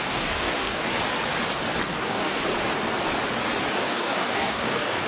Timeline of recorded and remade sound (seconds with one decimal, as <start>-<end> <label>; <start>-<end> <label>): 0.0-0.9 remade; 0.9-2.0 recorded; 2.0-2.4 remade; 2.4-3.7 recorded; 3.7-5.1 remade